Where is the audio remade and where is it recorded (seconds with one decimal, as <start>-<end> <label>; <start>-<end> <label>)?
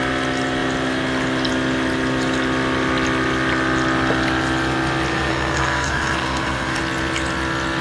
0.0-5.1 recorded; 5.1-6.8 remade; 6.8-7.8 recorded